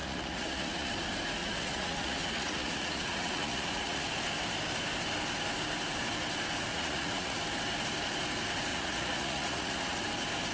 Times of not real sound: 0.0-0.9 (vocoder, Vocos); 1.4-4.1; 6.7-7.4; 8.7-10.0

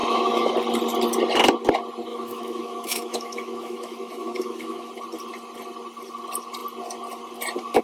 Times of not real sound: 0.0-0.5 (autoencoder, DAC-VAE); 2.1-4.9